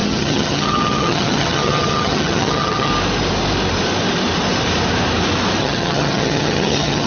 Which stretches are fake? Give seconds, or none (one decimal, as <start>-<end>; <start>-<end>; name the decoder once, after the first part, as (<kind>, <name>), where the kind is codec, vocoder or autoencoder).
0.0-2.9 (vocoder, HiFi-GAN); 5.6-7.1